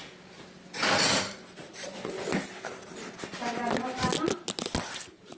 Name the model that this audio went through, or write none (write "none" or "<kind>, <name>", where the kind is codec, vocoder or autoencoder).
none